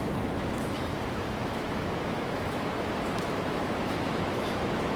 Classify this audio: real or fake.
fake